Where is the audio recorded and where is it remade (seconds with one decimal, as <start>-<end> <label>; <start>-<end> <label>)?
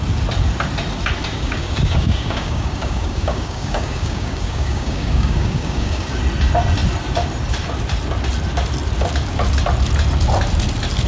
0.0-1.3 recorded; 1.3-6.2 remade; 6.2-11.1 recorded